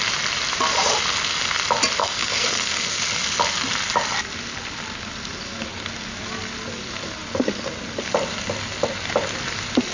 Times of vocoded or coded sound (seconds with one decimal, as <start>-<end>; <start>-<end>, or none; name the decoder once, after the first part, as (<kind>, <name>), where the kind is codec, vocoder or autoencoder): 2.0-3.0 (codec, SNAC)